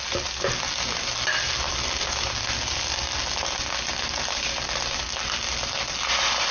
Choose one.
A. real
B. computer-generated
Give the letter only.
A